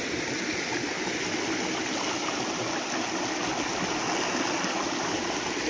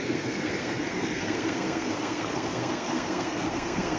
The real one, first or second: first